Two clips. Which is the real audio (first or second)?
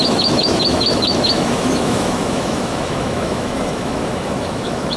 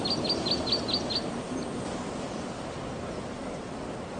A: second